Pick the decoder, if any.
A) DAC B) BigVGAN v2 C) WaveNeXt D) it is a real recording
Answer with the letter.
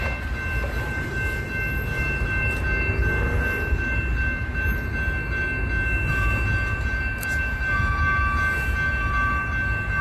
D